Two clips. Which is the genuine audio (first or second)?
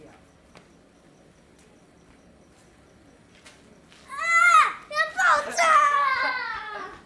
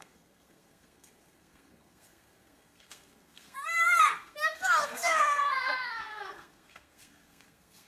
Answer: first